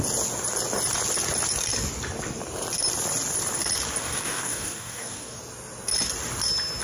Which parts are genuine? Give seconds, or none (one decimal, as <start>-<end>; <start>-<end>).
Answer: 0.0-4.0; 5.4-6.8